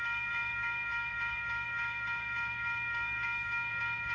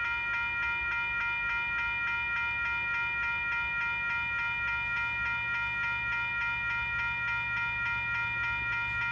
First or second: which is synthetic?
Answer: first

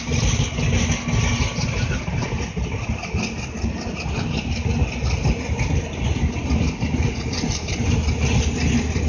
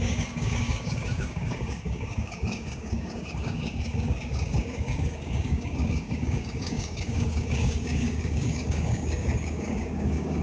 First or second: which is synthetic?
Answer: second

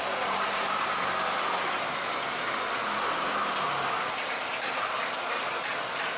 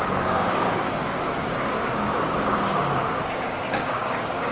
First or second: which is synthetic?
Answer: second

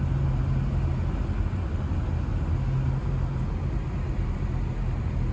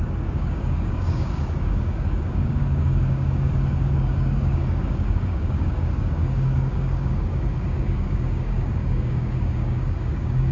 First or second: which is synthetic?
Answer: second